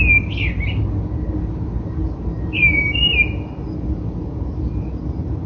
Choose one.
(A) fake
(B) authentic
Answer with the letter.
B